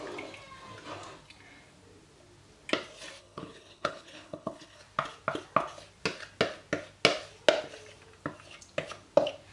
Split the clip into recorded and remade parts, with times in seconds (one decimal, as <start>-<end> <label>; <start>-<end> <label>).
0.0-3.2 recorded; 3.2-4.8 remade; 4.8-9.5 recorded

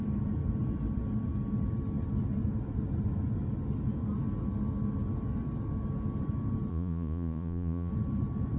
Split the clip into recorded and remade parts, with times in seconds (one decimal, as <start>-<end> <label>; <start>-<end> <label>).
0.0-6.7 recorded; 6.7-7.9 remade; 7.9-8.6 recorded

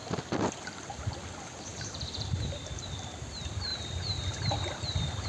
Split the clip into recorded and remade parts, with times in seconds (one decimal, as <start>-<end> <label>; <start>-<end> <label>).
0.0-1.0 remade; 1.0-1.7 recorded; 1.7-2.9 remade; 2.9-3.7 recorded; 3.7-5.3 remade

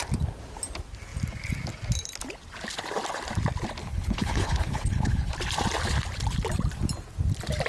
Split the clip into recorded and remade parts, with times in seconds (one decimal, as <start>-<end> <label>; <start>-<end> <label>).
0.0-3.8 recorded; 3.8-5.3 remade; 5.3-7.7 recorded

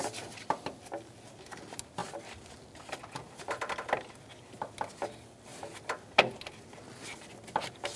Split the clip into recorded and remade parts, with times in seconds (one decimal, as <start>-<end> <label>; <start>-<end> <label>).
0.0-8.0 recorded